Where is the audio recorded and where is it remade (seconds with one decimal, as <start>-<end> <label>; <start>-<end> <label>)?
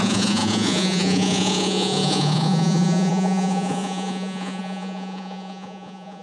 0.0-6.2 remade